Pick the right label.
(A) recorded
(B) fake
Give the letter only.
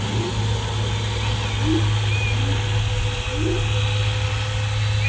A